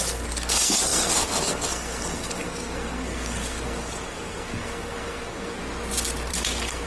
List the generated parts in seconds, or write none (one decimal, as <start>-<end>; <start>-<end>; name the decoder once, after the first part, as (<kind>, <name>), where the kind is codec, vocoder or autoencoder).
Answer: 0.0-5.6 (codec, SNAC); 6.3-6.9